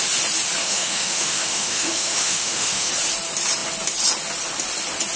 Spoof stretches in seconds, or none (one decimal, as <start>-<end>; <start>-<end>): 0.6-2.9